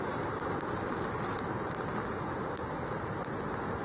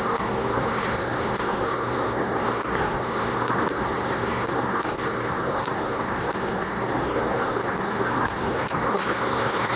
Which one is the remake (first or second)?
second